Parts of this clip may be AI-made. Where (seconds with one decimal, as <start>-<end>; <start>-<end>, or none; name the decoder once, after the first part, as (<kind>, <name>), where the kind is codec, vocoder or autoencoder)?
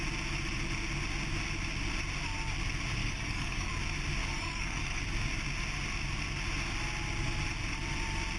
3.0-3.7 (codec, DAC); 4.2-5.0